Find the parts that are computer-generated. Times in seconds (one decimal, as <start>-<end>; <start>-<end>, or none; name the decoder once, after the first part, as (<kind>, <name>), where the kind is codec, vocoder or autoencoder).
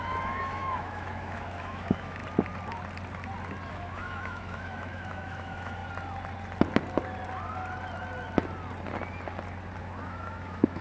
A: 0.0-2.2 (autoencoder, DAC-VAE); 3.7-5.8; 9.8-10.8